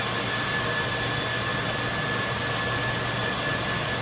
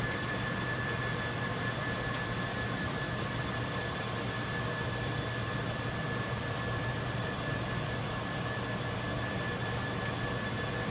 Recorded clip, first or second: first